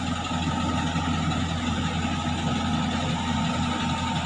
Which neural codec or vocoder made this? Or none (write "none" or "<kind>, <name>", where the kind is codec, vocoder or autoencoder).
none